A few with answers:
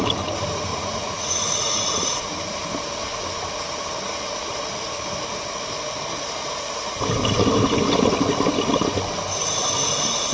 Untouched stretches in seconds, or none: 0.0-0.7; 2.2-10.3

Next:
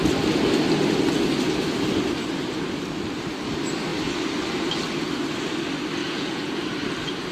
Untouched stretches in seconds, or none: 0.0-6.0; 6.5-7.3

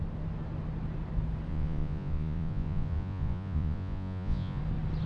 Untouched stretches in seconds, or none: 0.0-1.5; 4.6-5.1

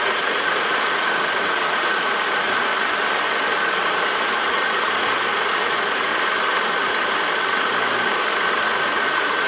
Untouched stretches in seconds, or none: 2.7-4.2; 6.1-8.6

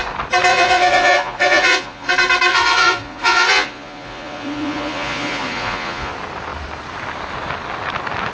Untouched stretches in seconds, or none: 0.0-0.5; 2.1-2.5; 6.1-8.3

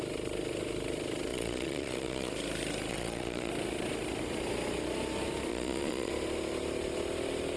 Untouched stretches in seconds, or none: 0.0-1.3; 2.3-2.9; 3.5-5.5; 6.1-7.6

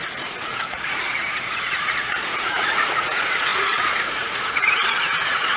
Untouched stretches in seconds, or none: none